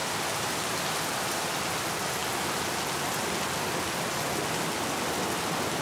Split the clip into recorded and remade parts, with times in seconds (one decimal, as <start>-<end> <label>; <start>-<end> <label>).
0.0-1.5 remade; 1.5-5.8 recorded